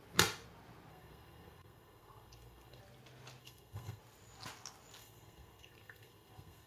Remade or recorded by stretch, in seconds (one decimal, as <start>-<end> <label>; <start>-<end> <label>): 0.0-0.9 recorded; 0.9-2.8 remade; 2.8-3.4 recorded; 3.4-4.0 remade; 4.0-5.0 recorded; 5.0-6.7 remade

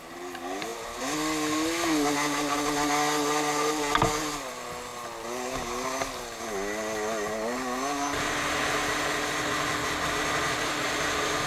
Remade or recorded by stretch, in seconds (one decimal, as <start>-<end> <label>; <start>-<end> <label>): 0.0-11.5 recorded

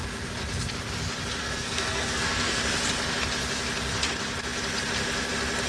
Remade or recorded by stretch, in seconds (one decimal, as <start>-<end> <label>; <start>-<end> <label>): 0.0-1.4 recorded; 1.4-2.6 remade; 2.6-5.7 recorded

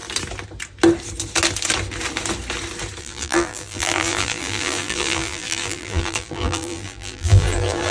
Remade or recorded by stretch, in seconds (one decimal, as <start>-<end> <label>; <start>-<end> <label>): 0.0-3.0 recorded; 3.0-7.9 remade